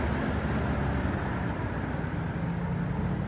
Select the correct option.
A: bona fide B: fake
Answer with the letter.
A